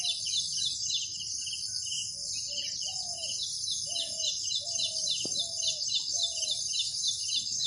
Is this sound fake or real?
real